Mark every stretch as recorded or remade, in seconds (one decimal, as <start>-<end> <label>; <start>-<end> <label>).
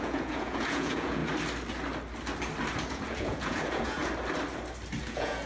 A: 0.0-1.2 remade; 1.2-2.9 recorded; 2.9-4.0 remade; 4.0-5.0 recorded; 5.0-5.5 remade